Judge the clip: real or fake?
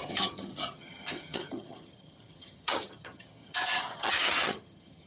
fake